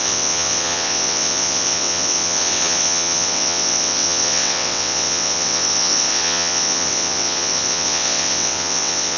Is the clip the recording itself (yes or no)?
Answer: no